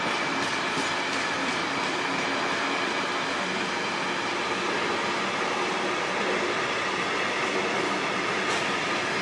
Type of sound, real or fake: real